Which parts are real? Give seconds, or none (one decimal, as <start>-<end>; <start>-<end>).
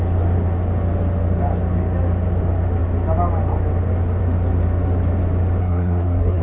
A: 0.0-5.6